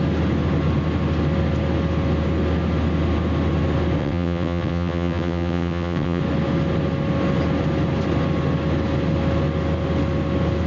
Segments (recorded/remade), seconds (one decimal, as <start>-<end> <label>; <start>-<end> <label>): 0.0-4.0 recorded; 4.0-6.2 remade; 6.2-10.7 recorded